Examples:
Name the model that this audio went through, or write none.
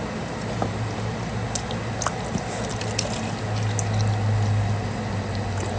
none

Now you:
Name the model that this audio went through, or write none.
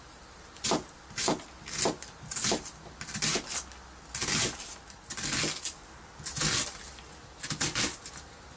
none